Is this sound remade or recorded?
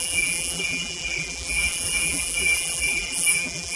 remade